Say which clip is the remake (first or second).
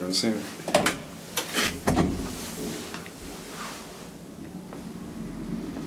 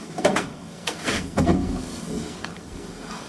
second